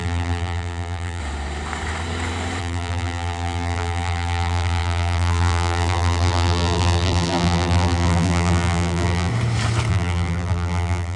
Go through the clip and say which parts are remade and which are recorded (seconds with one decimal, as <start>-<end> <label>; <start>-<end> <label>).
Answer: 0.0-1.2 remade; 1.2-2.6 recorded; 2.6-9.3 remade; 9.3-9.9 recorded; 9.9-11.2 remade